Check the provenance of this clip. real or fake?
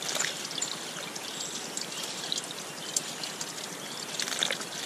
real